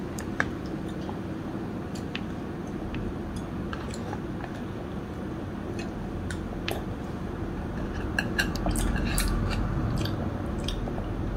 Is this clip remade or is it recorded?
recorded